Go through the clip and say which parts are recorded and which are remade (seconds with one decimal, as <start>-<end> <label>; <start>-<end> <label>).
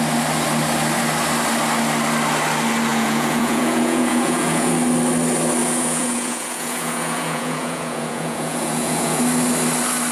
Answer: 0.0-2.9 recorded; 2.9-4.7 remade; 4.7-5.6 recorded; 5.6-9.2 remade; 9.2-10.1 recorded